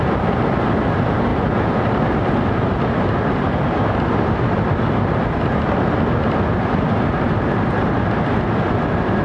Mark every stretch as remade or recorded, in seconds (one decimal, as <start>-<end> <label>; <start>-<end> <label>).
0.0-9.2 recorded